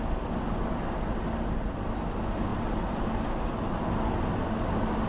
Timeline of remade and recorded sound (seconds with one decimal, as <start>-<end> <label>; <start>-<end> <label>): 0.0-5.1 recorded